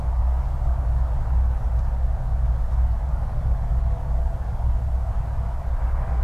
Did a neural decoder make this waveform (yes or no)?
yes